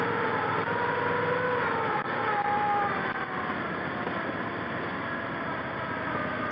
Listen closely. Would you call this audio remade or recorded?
recorded